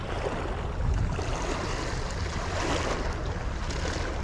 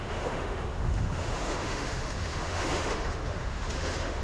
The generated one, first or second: second